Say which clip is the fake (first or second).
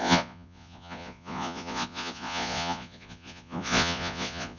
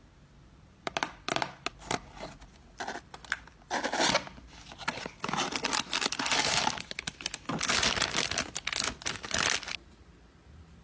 first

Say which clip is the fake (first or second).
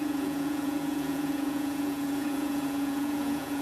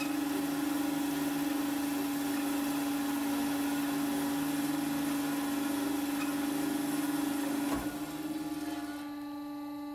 first